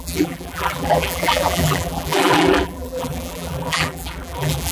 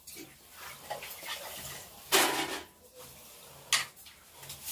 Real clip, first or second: second